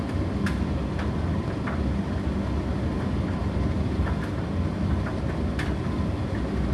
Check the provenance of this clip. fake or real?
real